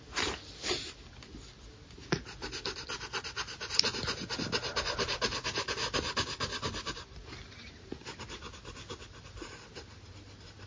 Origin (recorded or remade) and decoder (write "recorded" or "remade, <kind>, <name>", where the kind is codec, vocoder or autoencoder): recorded